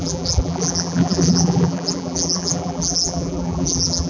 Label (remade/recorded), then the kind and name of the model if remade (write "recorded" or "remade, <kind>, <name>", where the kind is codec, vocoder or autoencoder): remade, vocoder, BigVGAN v2